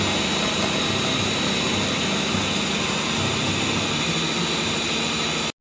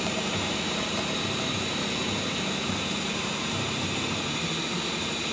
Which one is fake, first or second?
second